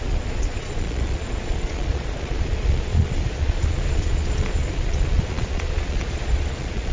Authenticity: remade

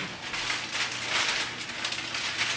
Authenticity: recorded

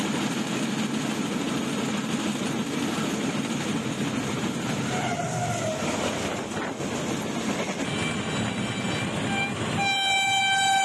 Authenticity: recorded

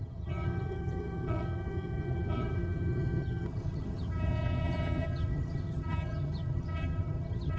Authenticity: remade